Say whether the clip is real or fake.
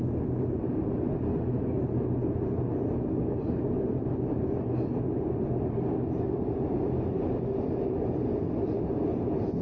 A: real